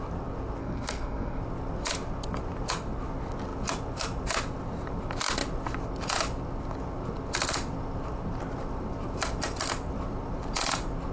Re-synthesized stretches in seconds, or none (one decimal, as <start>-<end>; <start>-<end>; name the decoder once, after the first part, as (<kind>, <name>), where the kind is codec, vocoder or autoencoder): 0.6-1.4 (codec, SNAC)